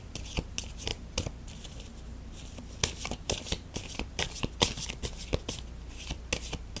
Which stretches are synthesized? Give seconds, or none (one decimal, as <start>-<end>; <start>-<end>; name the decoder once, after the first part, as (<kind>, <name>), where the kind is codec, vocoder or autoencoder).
0.9-5.0 (vocoder, BigVGAN v2)